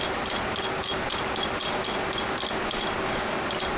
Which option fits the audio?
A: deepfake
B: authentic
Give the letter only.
B